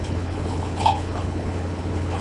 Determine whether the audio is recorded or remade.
remade